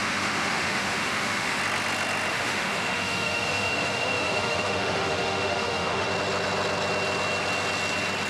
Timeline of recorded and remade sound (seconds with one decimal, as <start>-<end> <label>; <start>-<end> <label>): 0.0-1.6 remade; 1.6-2.3 recorded; 2.3-6.1 remade; 6.1-8.3 recorded